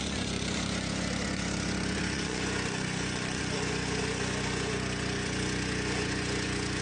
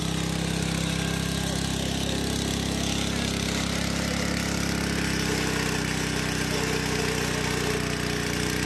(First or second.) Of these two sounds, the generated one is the first